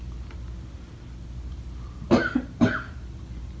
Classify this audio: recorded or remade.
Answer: recorded